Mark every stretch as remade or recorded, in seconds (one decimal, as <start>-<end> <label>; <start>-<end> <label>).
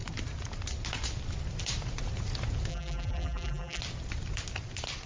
0.0-2.7 recorded; 2.7-3.8 remade; 3.8-5.1 recorded